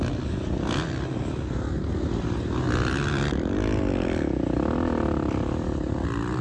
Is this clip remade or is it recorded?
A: recorded